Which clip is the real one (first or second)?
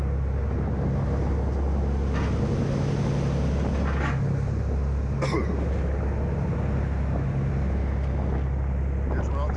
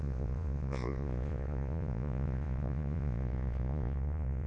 first